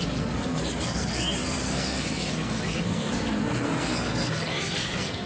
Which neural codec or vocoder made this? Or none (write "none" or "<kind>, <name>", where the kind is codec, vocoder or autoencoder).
codec, SNAC